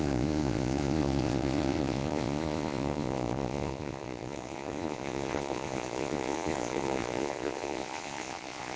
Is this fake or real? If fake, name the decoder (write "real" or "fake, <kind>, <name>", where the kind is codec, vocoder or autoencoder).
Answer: fake, vocoder, Vocos